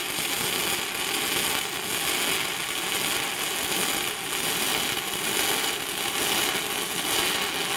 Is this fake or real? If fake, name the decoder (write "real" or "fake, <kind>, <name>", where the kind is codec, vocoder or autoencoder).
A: real